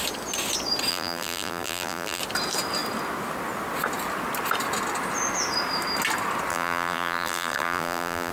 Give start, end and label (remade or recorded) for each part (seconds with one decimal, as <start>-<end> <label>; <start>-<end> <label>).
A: 0.0-0.9 recorded; 0.9-2.2 remade; 2.2-6.5 recorded; 6.5-8.3 remade